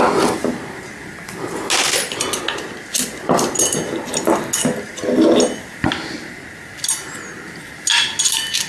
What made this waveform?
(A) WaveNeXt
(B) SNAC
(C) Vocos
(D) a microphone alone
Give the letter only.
D